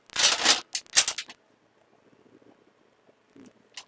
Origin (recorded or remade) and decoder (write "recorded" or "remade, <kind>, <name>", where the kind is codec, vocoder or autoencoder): recorded